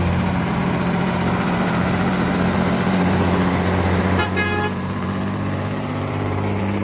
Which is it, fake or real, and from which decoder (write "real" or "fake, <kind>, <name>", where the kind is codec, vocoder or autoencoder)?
fake, vocoder, BigVGAN v2